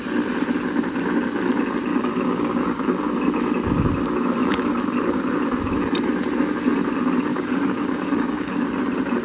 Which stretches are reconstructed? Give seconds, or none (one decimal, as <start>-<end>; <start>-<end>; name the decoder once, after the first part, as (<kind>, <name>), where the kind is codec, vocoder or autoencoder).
1.9-3.1 (codec, DAC); 4.4-5.2; 7.3-8.7